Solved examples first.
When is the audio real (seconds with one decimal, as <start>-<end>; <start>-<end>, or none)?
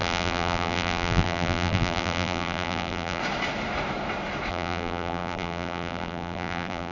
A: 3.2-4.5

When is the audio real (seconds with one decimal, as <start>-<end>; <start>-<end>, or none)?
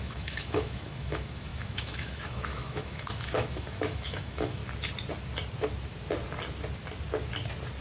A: 4.6-7.8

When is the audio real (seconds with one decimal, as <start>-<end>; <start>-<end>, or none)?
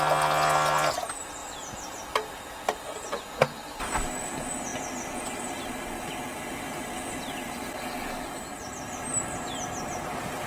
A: 0.0-10.5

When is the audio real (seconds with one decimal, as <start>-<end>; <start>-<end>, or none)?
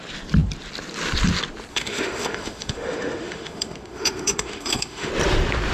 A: 0.0-1.7; 5.1-5.7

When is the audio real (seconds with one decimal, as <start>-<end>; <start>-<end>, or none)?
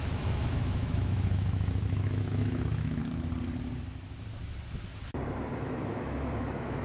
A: 3.0-5.6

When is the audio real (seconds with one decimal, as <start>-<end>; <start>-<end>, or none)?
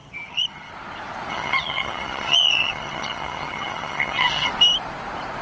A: 0.7-1.3; 4.5-5.4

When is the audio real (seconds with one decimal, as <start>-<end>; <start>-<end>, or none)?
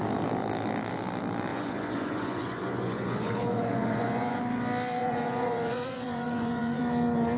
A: 0.0-1.5; 4.4-5.0; 6.8-7.4